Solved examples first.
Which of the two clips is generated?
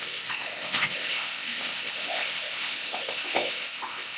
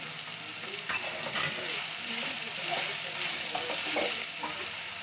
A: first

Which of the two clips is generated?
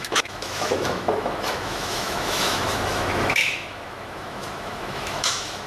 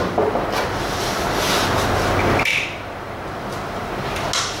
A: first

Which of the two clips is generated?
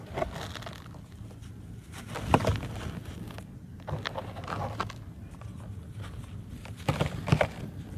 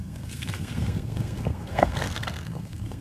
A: second